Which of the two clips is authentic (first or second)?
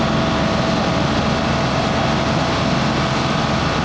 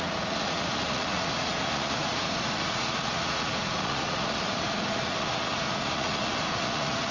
first